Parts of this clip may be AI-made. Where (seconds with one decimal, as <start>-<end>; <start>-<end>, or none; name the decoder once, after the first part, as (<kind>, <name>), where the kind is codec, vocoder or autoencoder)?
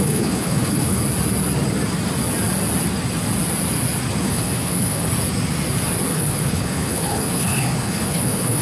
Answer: 0.0-1.0 (codec, HILCodec); 4.2-5.1; 6.1-8.6